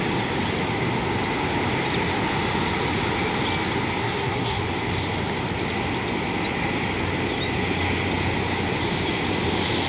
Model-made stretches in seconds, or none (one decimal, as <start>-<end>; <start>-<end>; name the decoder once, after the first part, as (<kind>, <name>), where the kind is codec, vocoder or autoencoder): 4.0-4.6 (codec, SNAC)